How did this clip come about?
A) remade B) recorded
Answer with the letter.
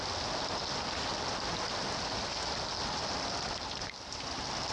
B